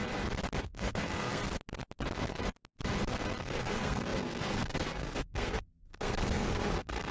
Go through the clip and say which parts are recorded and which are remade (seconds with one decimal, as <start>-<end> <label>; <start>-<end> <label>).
0.0-0.6 recorded; 0.6-1.4 remade; 1.4-3.4 recorded; 3.4-7.1 remade